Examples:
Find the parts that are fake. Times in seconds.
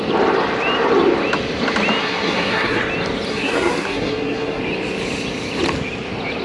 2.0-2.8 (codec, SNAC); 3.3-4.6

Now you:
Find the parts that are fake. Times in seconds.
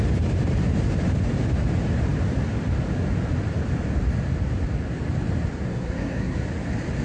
5.7-6.4 (codec, SNAC)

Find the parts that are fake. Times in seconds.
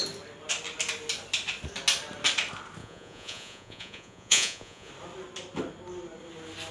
2.8-4.9 (vocoder, Vocos)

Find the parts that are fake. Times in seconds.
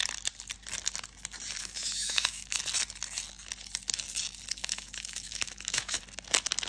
1.6-2.6 (autoencoder, DAC-VAE); 4.6-6.0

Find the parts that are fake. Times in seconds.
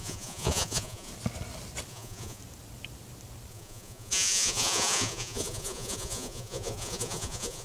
0.0-1.1 (vocoder, Vocos); 1.9-2.4; 3.5-7.6